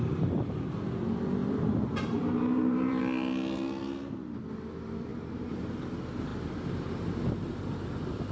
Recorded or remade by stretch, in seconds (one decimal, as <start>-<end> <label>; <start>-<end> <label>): 0.0-1.4 recorded; 1.4-3.0 remade; 3.0-5.1 recorded; 5.1-5.7 remade; 5.7-6.3 recorded; 6.3-6.9 remade; 6.9-8.3 recorded